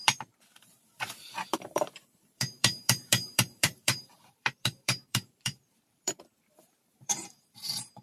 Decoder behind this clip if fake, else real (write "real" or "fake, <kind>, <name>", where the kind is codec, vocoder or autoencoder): fake, vocoder, BigVGAN v2